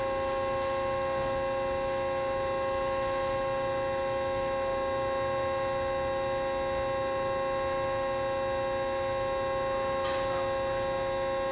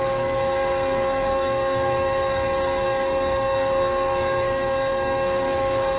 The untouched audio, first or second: first